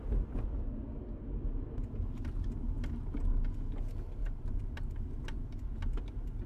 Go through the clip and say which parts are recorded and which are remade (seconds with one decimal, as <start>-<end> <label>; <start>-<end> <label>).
0.0-4.2 recorded; 4.2-4.7 remade; 4.7-6.5 recorded